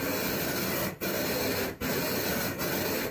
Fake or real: real